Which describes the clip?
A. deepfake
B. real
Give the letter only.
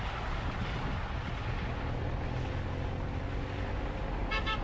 B